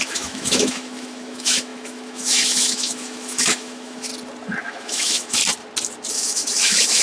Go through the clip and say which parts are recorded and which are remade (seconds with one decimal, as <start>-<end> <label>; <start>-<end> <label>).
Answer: 0.0-4.1 remade; 4.1-4.6 recorded; 4.6-5.4 remade; 5.4-6.1 recorded; 6.1-7.0 remade